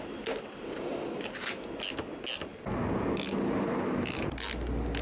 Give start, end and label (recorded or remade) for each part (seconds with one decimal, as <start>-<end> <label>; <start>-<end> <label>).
0.0-5.0 recorded

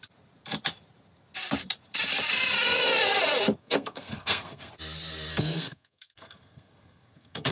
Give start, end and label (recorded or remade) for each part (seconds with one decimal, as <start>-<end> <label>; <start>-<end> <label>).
0.0-3.6 recorded; 3.6-4.7 remade; 4.7-5.3 recorded; 5.3-7.5 remade

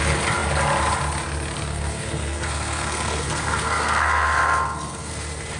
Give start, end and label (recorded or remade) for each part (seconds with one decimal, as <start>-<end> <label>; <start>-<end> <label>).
0.0-1.7 recorded; 1.7-5.1 remade; 5.1-5.6 recorded

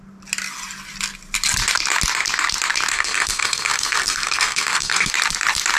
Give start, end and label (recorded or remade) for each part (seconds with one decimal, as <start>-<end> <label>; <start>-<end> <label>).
0.0-2.9 recorded; 2.9-5.1 remade; 5.1-5.8 recorded

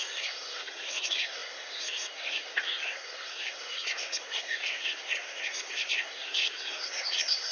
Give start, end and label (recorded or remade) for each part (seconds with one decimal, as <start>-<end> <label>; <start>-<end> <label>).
0.0-7.5 remade

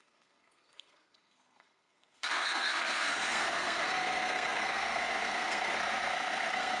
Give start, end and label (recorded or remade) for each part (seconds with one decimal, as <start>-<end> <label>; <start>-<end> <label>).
0.0-6.8 remade